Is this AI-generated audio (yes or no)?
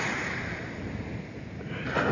no